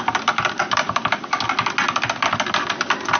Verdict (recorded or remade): recorded